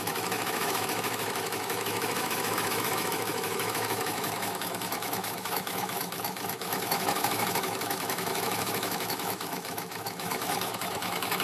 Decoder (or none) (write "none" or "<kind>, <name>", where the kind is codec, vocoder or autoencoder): autoencoder, DAC-VAE